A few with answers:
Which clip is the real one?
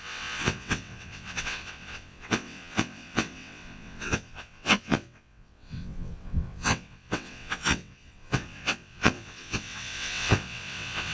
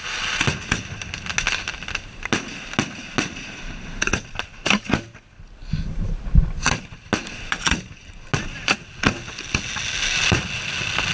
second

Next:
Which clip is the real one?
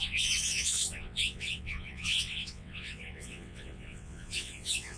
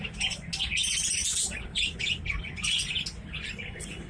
second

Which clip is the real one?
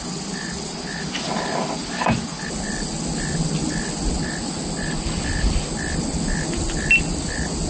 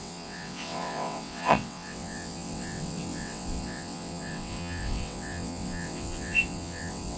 first